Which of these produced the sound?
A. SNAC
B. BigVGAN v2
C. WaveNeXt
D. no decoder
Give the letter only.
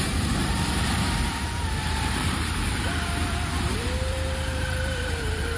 B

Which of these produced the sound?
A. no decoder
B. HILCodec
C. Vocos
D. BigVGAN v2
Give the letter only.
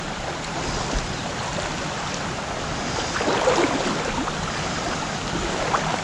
A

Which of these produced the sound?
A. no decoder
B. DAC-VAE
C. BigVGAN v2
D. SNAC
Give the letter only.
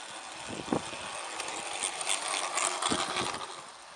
A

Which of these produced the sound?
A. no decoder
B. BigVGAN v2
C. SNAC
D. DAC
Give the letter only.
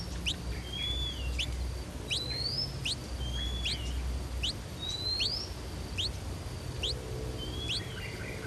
A